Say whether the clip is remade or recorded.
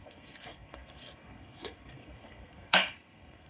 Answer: remade